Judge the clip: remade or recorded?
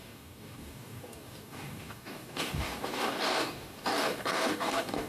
remade